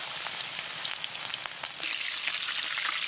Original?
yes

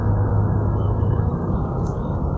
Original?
no